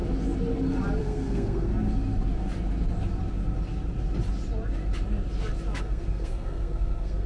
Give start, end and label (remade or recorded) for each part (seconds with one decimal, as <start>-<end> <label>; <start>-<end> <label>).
0.0-1.0 recorded; 1.0-1.7 remade; 1.7-5.8 recorded; 5.8-7.3 remade